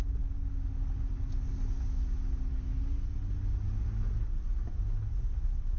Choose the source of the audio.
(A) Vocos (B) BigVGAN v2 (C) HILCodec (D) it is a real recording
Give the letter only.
D